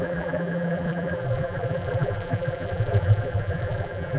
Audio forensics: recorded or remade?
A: remade